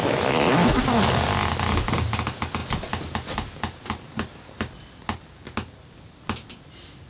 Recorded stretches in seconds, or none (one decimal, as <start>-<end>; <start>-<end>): 0.8-7.1

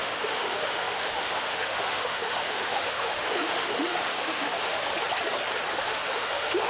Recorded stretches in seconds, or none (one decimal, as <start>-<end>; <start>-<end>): 4.9-5.7

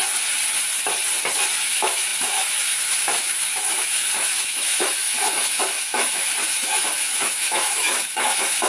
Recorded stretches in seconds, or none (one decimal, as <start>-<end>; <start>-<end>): 0.0-1.6

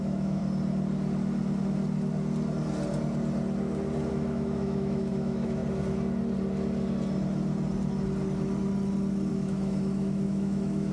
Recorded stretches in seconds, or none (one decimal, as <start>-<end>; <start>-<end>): 0.4-4.1; 5.6-9.3